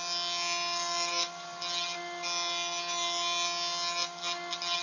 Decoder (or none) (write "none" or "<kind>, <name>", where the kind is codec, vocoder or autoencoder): none